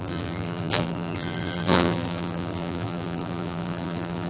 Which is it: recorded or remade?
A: remade